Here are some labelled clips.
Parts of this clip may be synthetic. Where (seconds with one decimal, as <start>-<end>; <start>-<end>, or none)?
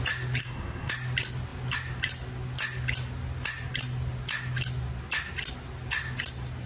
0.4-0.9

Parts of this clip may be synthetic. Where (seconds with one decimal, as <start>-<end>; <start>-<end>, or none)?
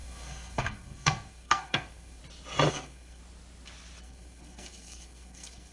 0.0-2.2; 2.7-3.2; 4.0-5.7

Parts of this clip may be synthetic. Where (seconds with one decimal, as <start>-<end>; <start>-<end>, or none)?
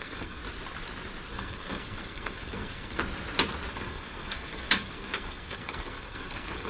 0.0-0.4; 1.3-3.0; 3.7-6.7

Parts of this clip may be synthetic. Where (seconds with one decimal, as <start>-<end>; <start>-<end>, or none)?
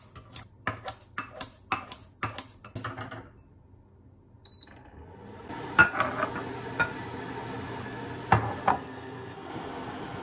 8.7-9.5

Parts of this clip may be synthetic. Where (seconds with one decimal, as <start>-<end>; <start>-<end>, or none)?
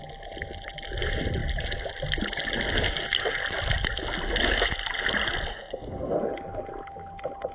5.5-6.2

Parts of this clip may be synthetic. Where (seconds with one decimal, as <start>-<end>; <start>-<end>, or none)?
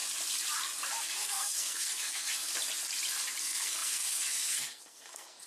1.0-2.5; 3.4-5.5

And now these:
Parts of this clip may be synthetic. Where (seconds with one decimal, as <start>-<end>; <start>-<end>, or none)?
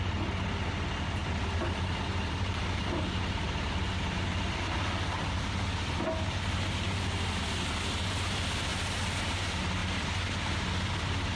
none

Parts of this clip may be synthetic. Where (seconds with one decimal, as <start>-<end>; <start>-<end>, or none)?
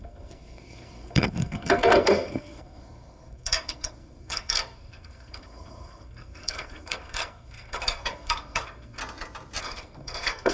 0.0-9.0; 9.6-10.5